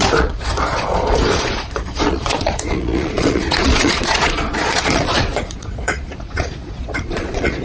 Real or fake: fake